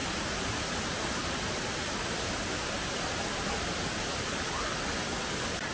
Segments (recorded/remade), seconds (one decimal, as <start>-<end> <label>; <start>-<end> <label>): 0.0-5.7 recorded